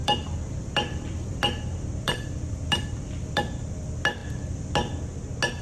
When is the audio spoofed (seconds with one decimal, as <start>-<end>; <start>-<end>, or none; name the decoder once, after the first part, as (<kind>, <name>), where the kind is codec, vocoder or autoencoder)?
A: 0.0-3.4 (vocoder, BigVGAN v2)